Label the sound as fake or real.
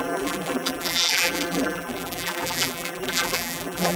fake